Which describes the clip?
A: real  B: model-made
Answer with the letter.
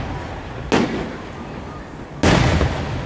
A